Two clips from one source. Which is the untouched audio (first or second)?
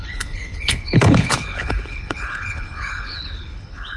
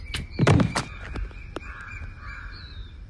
second